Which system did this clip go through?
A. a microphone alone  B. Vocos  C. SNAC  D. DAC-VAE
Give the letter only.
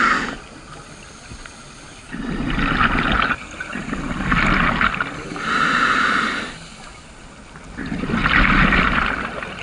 A